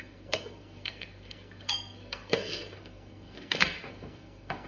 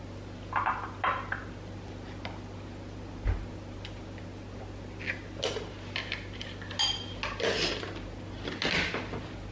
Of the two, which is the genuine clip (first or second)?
second